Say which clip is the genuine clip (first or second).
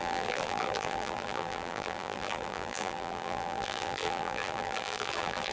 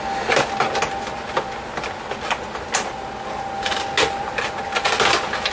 second